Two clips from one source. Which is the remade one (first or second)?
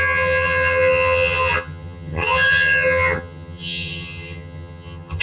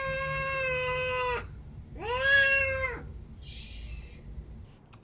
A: first